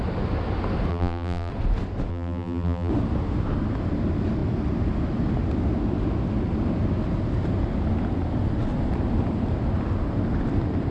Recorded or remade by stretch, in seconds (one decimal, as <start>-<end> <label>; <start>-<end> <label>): 0.0-0.9 recorded; 0.9-1.5 remade; 1.5-2.1 recorded; 2.1-2.9 remade; 2.9-10.9 recorded